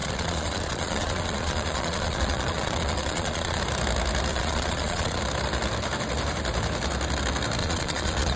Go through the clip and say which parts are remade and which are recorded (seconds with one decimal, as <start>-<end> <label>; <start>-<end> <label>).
0.0-3.6 remade; 3.6-4.3 recorded; 4.3-5.2 remade; 5.2-7.6 recorded; 7.6-8.4 remade